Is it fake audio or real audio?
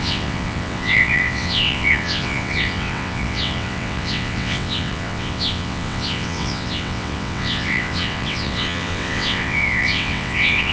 fake